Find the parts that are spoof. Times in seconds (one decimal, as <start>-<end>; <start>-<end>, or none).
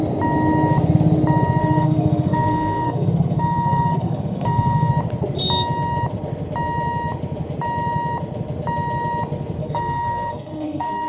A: 1.6-4.9; 9.6-11.1